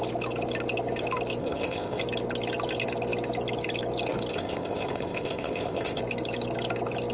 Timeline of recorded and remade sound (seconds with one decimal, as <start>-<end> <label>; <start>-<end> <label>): 0.0-1.4 recorded; 1.4-2.0 remade; 2.0-4.3 recorded; 4.3-6.0 remade; 6.0-7.1 recorded